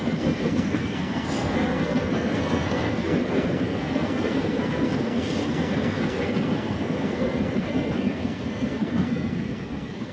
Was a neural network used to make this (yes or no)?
yes